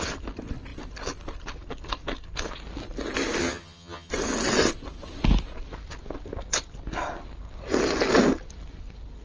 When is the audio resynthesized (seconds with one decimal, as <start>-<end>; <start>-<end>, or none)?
3.4-4.1